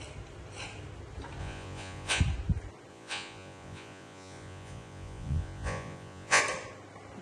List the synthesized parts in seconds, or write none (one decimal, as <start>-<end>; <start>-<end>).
1.4-2.2; 2.9-6.4